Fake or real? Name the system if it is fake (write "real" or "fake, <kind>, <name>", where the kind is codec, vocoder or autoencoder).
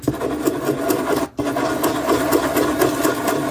real